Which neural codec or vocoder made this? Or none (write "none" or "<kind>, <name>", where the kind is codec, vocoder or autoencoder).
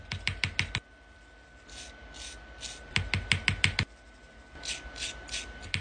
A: none